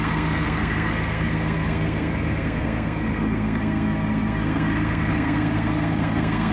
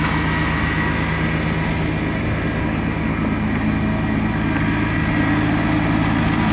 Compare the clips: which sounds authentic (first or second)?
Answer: second